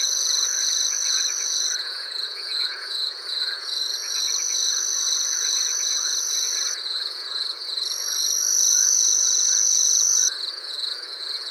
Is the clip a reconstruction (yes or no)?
yes